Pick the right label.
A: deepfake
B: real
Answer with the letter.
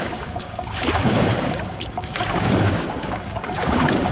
A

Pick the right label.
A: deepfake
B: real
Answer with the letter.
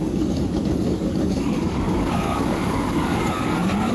A